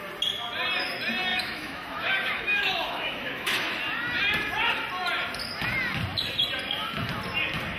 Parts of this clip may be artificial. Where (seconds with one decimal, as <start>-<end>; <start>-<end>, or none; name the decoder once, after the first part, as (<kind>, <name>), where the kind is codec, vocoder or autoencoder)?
1.3-3.8 (autoencoder, DAC-VAE)